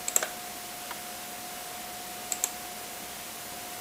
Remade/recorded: recorded